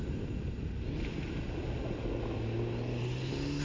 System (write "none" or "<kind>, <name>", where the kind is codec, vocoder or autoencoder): none